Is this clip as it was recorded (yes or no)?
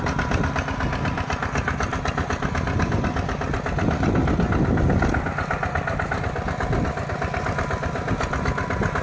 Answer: yes